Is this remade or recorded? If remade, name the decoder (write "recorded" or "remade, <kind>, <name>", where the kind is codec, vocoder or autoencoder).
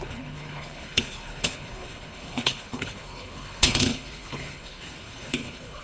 remade, codec, HILCodec